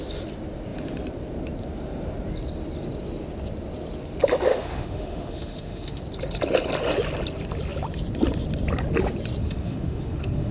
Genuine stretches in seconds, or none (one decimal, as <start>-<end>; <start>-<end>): 0.0-4.5; 6.0-9.4